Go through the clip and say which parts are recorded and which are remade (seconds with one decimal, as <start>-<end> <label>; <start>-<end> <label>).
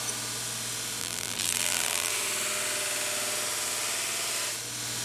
0.0-1.0 recorded; 1.0-2.1 remade; 2.1-5.0 recorded